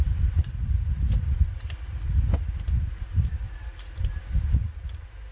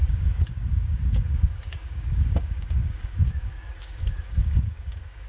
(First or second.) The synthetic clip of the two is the second